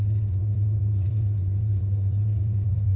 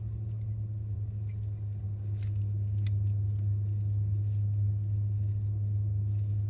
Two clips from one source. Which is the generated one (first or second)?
first